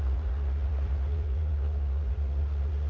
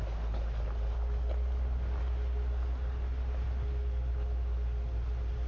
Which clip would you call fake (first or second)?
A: first